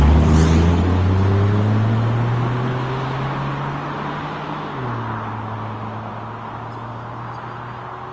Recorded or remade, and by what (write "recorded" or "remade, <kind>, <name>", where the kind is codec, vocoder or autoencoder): recorded